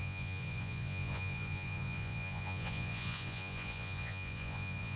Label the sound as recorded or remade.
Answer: remade